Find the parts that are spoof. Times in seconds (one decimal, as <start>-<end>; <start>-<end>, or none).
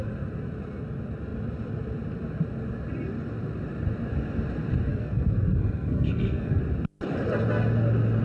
4.9-6.6